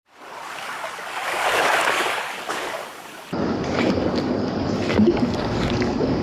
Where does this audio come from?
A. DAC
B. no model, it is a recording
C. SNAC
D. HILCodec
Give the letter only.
A